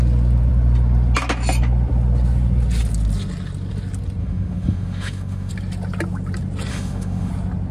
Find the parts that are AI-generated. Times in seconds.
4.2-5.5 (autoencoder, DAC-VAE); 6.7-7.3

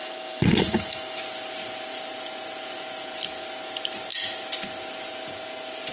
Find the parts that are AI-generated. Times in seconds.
0.0-1.2 (autoencoder, DAC-VAE)

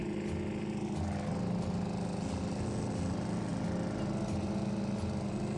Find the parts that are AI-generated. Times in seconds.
none

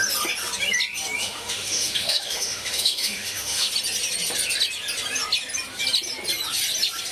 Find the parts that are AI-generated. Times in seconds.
1.2-3.7 (autoencoder, DAC-VAE)

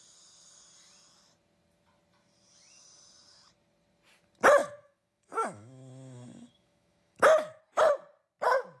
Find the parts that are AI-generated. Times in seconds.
4.6-7.6 (autoencoder, DAC-VAE)

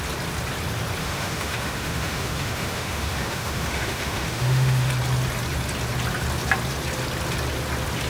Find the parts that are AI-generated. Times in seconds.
1.0-4.9 (autoencoder, DAC-VAE)